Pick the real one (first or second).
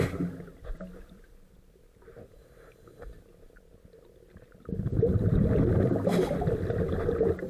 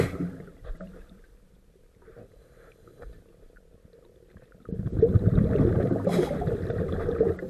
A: first